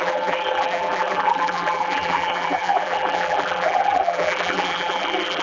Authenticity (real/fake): fake